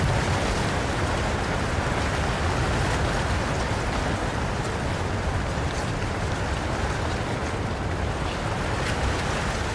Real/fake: real